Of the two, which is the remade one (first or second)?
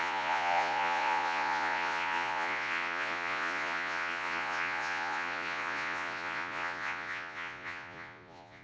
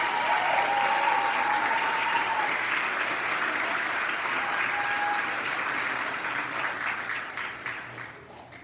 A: first